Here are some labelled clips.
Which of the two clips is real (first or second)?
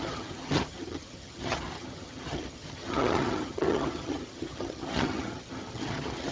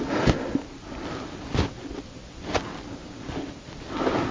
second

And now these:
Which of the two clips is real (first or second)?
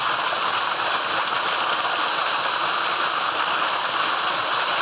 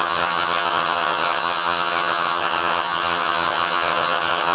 first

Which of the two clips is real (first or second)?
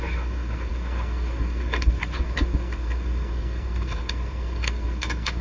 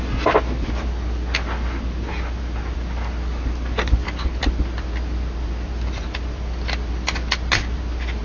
second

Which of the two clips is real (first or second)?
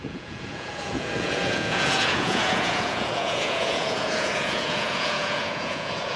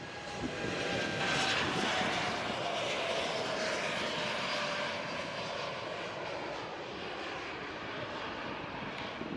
second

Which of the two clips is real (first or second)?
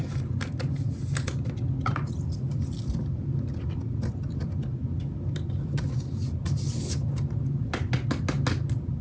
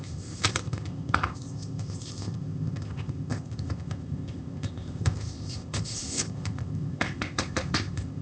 first